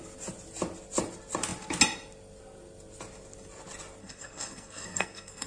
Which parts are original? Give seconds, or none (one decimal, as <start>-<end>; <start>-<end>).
0.0-4.0